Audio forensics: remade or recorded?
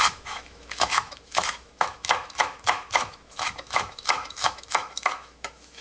remade